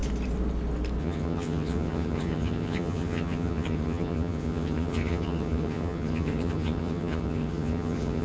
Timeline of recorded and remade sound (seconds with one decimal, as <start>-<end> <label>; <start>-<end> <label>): 0.0-1.0 recorded; 1.0-8.2 remade